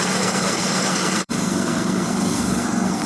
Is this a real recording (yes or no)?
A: no